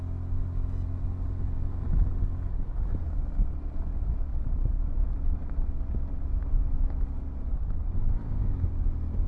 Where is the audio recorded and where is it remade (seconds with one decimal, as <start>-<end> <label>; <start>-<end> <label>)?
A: 0.0-4.3 recorded; 4.3-4.8 remade; 4.8-9.3 recorded

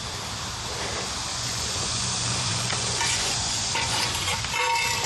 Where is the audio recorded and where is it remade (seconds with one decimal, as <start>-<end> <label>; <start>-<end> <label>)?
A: 0.0-1.3 recorded; 1.3-4.4 remade; 4.4-5.1 recorded

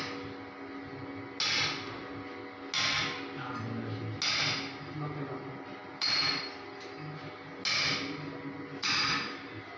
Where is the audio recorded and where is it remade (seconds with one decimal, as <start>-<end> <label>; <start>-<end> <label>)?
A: 0.0-9.8 recorded

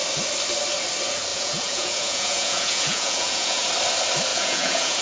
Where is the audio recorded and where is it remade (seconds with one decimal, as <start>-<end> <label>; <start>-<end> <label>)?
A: 0.0-1.3 recorded; 1.3-3.7 remade; 3.7-4.3 recorded; 4.3-5.0 remade